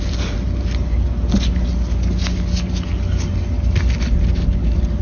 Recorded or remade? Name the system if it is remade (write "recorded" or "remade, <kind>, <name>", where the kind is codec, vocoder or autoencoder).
recorded